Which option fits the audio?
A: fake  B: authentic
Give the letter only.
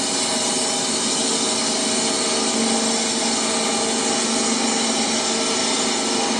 B